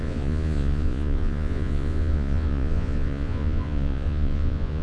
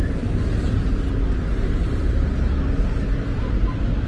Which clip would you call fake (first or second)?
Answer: first